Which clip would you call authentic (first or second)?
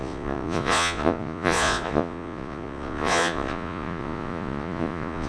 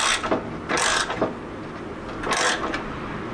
second